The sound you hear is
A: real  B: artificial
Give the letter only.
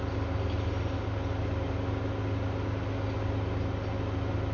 A